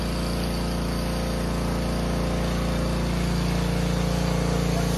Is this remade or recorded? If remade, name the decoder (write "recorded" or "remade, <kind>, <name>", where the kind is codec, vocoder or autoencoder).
recorded